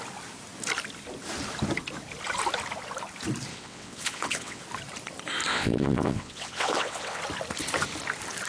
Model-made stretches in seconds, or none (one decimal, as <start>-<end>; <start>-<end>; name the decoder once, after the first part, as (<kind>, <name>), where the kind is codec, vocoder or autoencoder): 3.5-4.6 (vocoder, WaveNeXt); 5.5-7.2